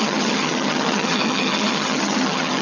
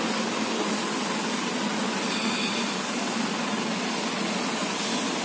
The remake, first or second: first